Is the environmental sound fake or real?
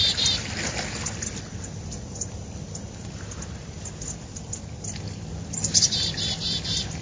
real